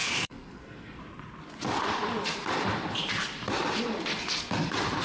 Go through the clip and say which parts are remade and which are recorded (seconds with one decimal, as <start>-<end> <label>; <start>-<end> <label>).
0.0-1.0 remade; 1.0-5.0 recorded